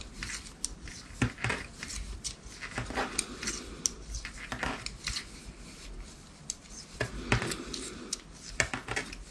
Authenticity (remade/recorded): recorded